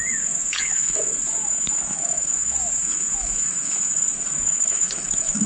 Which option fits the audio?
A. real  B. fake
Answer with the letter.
B